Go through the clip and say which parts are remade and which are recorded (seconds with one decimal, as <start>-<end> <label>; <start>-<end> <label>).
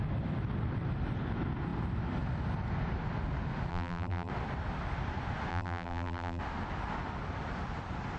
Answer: 0.0-3.7 recorded; 3.7-4.3 remade; 4.3-5.5 recorded; 5.5-6.4 remade; 6.4-8.2 recorded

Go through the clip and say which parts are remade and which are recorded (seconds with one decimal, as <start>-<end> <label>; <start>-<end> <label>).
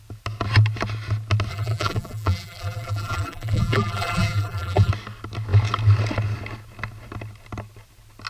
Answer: 0.0-1.5 recorded; 1.5-4.9 remade; 4.9-8.3 recorded